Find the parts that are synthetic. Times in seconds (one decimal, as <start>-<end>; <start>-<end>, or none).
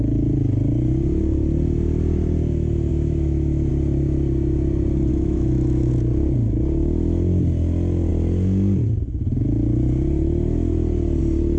2.9-3.7; 5.1-5.9